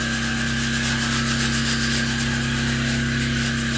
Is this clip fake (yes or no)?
no